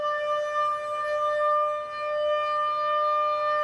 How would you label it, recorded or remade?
recorded